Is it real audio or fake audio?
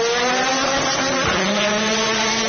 real